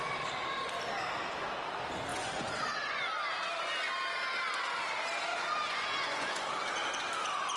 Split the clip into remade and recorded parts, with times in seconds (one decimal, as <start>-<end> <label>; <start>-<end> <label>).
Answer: 0.0-2.1 recorded; 2.1-2.6 remade; 2.6-5.3 recorded; 5.3-6.5 remade; 6.5-7.6 recorded